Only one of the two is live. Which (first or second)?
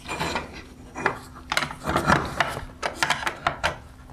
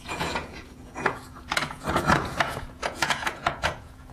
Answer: first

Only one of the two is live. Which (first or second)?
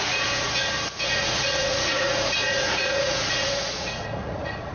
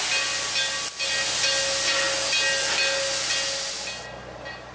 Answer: second